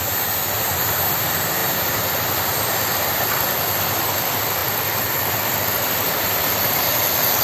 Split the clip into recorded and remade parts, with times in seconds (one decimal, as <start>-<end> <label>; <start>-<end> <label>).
0.0-7.4 recorded